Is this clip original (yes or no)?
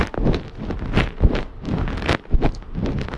yes